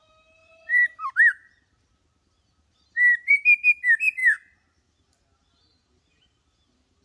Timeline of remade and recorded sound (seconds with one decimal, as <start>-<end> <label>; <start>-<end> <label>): 0.0-0.4 recorded; 0.4-0.9 remade; 0.9-7.0 recorded